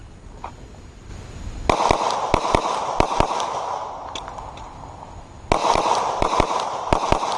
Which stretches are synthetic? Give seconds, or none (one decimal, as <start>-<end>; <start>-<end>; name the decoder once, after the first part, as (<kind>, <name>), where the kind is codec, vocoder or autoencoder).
5.6-6.4 (vocoder, BigVGAN v2)